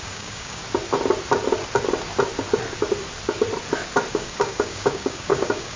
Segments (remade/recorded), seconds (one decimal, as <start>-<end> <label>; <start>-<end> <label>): 0.0-0.6 remade; 0.6-4.1 recorded; 4.1-5.8 remade